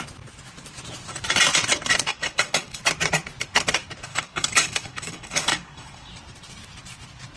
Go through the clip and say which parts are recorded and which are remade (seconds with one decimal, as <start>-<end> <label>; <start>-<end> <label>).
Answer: 0.0-2.1 recorded; 2.1-2.8 remade; 2.8-4.1 recorded; 4.1-6.1 remade; 6.1-7.4 recorded

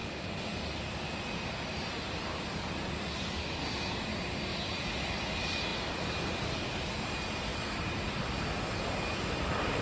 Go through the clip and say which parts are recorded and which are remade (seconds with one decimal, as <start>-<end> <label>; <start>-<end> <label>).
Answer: 0.0-0.6 remade; 0.6-9.8 recorded

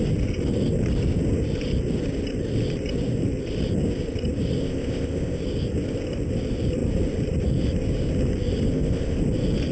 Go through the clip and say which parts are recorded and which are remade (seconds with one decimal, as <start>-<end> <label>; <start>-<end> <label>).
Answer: 0.0-4.6 recorded; 4.6-5.4 remade; 5.4-8.7 recorded; 8.7-9.2 remade; 9.2-9.7 recorded

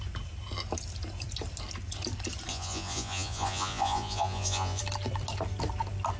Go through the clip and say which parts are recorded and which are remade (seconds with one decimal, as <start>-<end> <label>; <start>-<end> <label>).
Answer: 0.0-2.5 recorded; 2.5-4.8 remade; 4.8-6.2 recorded

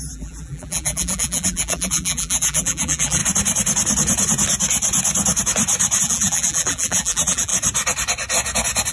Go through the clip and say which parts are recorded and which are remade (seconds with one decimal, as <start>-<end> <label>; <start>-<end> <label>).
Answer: 0.0-3.2 remade; 3.2-6.0 recorded; 6.0-7.5 remade; 7.5-8.9 recorded